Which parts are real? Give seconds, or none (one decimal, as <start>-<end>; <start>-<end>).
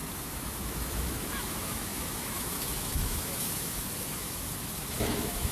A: none